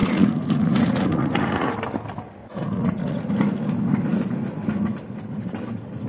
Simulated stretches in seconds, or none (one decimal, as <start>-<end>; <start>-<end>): 0.0-1.7; 2.4-3.2